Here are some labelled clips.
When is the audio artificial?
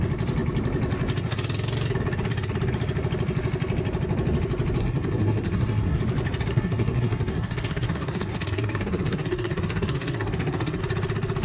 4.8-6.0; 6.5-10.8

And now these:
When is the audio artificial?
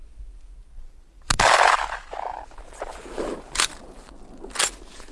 0.6-1.7; 2.3-4.1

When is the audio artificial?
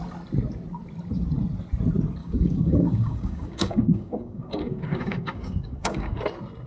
2.2-6.2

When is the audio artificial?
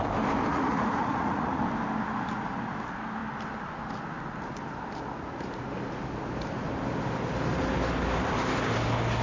0.5-1.6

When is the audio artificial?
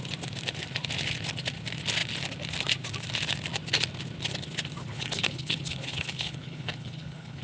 4.8-7.4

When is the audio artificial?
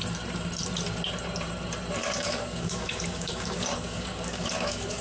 2.0-5.0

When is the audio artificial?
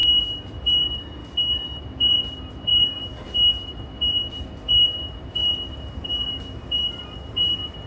0.5-1.2; 2.0-7.9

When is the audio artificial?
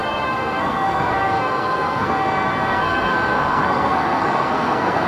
0.0-5.1